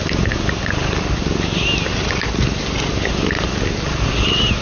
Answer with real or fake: real